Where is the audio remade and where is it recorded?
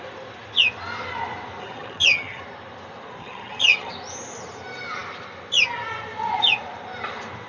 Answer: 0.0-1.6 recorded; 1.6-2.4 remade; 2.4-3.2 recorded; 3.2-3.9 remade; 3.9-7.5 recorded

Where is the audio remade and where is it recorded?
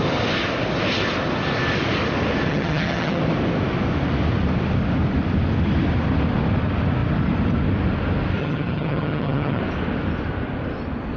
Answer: 0.0-2.5 recorded; 2.5-3.2 remade; 3.2-8.4 recorded; 8.4-9.6 remade; 9.6-11.2 recorded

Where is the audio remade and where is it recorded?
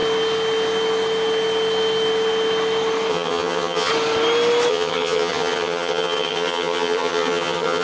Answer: 0.0-3.1 recorded; 3.1-3.9 remade; 3.9-4.7 recorded; 4.7-7.8 remade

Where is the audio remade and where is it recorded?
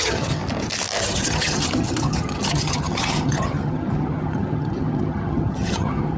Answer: 0.0-0.4 remade; 0.4-1.0 recorded; 1.0-6.2 remade